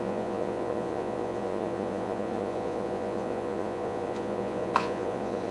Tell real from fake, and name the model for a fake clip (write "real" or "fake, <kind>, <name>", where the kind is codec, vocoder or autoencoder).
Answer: fake, vocoder, Vocos